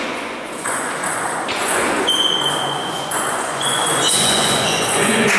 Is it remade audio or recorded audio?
remade